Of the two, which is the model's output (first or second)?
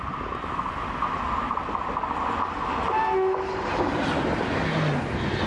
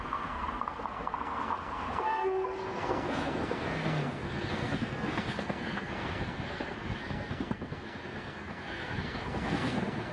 second